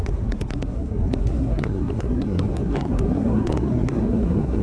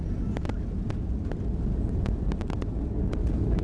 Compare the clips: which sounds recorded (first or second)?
second